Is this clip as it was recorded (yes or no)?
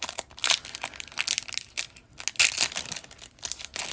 yes